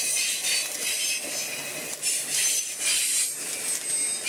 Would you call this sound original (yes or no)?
yes